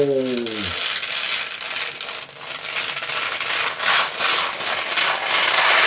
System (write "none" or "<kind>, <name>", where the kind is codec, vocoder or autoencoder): none